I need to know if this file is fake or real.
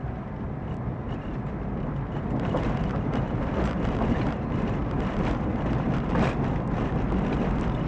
real